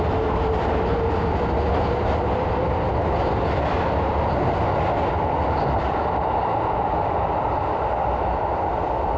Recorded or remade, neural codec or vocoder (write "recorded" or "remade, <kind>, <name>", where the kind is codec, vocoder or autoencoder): recorded